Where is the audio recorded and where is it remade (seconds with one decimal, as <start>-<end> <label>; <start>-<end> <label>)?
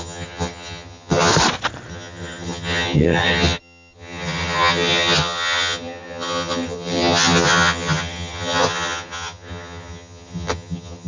0.0-1.3 remade; 1.3-1.9 recorded; 1.9-11.1 remade